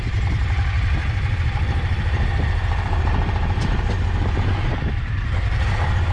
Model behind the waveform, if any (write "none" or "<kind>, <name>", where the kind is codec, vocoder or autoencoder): vocoder, BigVGAN v2